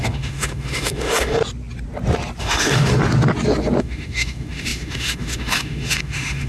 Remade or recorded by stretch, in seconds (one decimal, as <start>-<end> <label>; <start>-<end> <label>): 0.0-1.4 remade; 1.4-2.4 recorded; 2.4-2.9 remade; 2.9-3.8 recorded; 3.8-6.5 remade